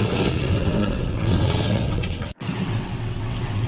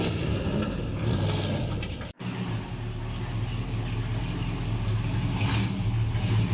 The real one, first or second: second